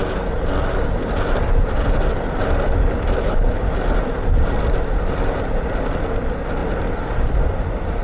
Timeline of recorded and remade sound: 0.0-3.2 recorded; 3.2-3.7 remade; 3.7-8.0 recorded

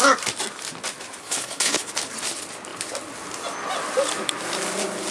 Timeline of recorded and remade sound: 0.0-1.2 recorded; 1.2-1.9 remade; 1.9-5.1 recorded

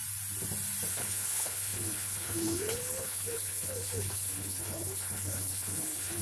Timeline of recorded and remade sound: 0.0-0.9 recorded; 0.9-6.2 remade

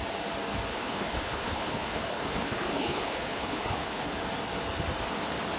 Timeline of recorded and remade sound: 0.0-0.7 recorded; 0.7-4.1 remade; 4.1-5.6 recorded

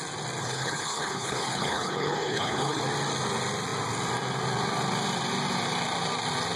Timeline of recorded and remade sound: 0.0-0.4 recorded; 0.4-2.8 remade; 2.8-6.6 recorded

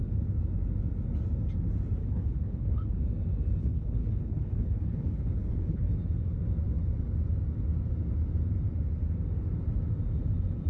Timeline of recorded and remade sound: 0.0-2.0 recorded; 2.0-3.0 remade; 3.0-3.6 recorded; 3.6-5.9 remade; 5.9-10.7 recorded

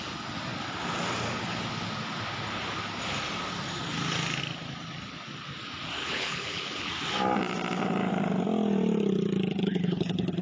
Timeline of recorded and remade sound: 0.0-6.0 recorded; 6.0-6.9 remade; 6.9-9.6 recorded; 9.6-10.4 remade